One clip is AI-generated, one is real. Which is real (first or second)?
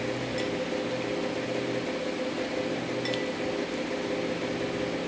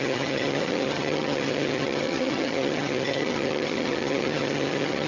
first